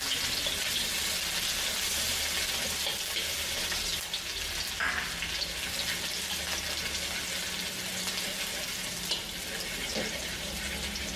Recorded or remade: recorded